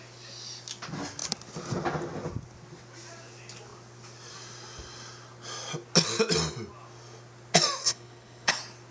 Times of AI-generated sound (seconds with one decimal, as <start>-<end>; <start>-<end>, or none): 7.8-8.5